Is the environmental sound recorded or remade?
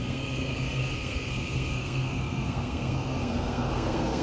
remade